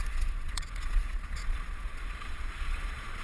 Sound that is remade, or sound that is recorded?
remade